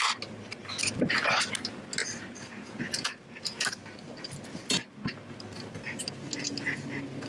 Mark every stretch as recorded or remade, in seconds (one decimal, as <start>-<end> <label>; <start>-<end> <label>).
0.0-2.0 recorded; 2.0-2.7 remade; 2.7-7.3 recorded

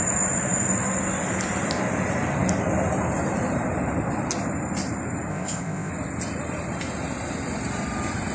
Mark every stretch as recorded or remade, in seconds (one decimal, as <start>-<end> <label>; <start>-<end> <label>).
0.0-5.3 recorded; 5.3-5.9 remade; 5.9-8.3 recorded